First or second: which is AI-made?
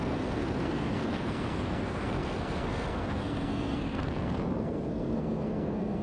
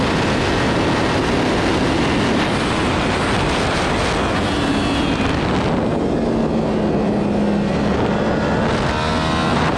first